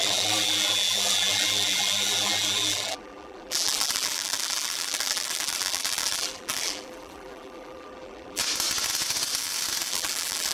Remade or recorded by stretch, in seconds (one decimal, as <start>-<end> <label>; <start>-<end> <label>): 0.0-8.4 remade; 8.4-9.9 recorded; 9.9-10.5 remade